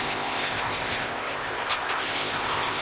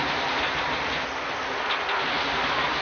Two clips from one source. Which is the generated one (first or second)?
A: first